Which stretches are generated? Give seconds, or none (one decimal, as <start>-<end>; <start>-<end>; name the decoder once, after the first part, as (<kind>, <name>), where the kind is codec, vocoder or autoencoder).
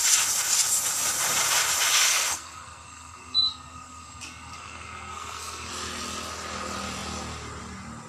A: 2.1-5.7 (codec, SNAC)